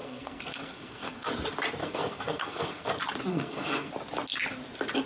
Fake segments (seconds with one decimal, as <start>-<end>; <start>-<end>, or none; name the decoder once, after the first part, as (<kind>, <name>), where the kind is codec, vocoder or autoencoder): 0.0-1.3 (codec, SNAC); 1.8-2.9; 3.3-3.9